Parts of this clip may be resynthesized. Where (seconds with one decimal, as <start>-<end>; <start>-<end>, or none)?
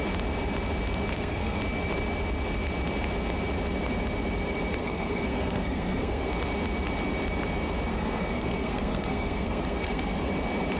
1.1-1.6; 4.8-6.3; 7.9-10.3